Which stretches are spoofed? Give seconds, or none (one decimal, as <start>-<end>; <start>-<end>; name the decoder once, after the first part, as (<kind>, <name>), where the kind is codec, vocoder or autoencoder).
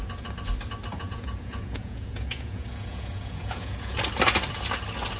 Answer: 0.9-4.0 (vocoder, Vocos)